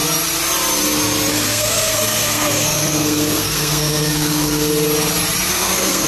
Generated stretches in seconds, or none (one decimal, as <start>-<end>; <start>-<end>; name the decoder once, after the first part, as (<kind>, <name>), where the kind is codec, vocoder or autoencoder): 1.3-4.7 (codec, SNAC); 5.5-6.1